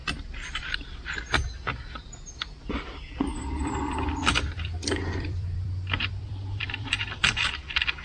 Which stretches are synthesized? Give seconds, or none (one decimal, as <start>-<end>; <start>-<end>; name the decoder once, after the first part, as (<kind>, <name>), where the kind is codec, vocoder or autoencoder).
4.2-8.0 (vocoder, BigVGAN v2)